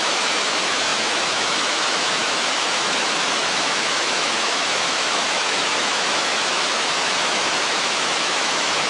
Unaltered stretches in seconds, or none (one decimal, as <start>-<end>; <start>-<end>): none